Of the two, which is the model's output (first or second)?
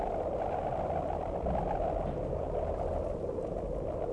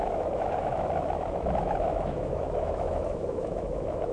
second